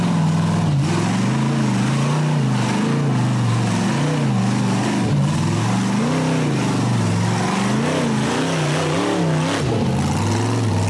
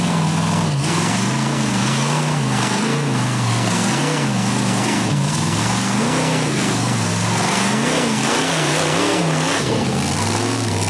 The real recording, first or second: first